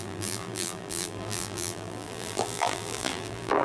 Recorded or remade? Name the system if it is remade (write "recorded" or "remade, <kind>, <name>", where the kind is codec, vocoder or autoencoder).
remade, vocoder, BigVGAN v2